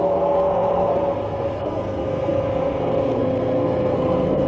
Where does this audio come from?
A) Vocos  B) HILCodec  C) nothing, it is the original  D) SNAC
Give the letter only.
D